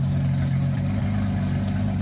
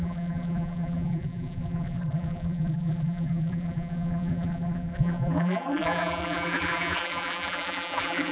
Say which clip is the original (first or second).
first